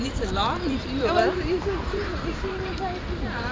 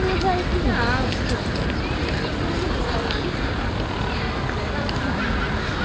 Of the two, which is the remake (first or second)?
first